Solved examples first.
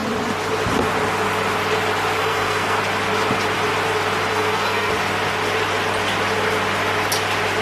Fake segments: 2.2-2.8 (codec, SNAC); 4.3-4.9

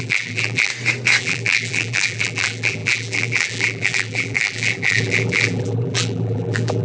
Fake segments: 0.0-0.7 (vocoder, BigVGAN v2); 1.2-6.8

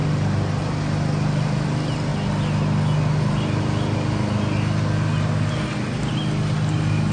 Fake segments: none

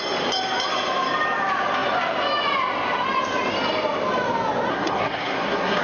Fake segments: 4.7-5.8 (codec, SNAC)

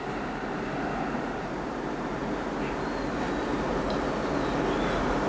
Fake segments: 0.0-2.2 (vocoder, BigVGAN v2); 4.7-5.3

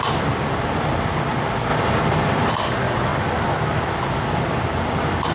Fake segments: 1.7-2.5 (vocoder, BigVGAN v2); 3.1-4.5